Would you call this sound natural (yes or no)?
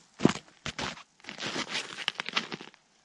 yes